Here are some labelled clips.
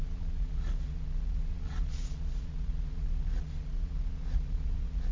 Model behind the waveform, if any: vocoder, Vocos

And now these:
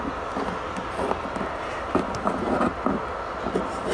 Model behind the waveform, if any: none